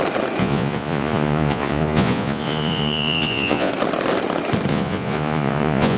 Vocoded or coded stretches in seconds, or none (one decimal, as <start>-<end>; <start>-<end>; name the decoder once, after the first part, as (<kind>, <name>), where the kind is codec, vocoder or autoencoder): 0.4-3.7 (vocoder, Vocos); 4.7-6.0